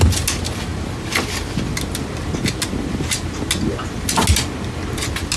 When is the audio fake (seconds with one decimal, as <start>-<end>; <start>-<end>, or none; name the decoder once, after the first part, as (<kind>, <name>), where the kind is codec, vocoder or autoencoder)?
none